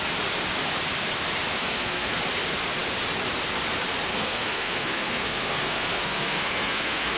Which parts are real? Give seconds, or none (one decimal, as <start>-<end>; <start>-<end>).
0.0-1.6; 2.2-4.1